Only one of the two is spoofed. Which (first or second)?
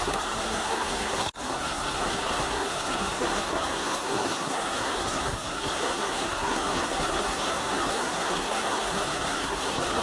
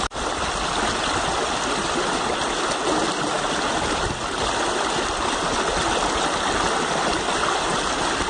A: first